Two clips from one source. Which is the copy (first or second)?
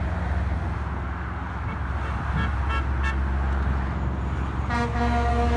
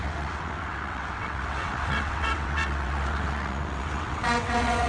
second